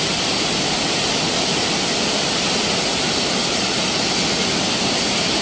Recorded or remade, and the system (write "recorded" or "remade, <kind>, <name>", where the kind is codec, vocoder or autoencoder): recorded